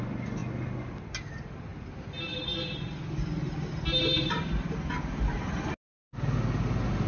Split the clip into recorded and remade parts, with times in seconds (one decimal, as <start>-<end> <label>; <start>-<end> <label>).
0.0-7.1 recorded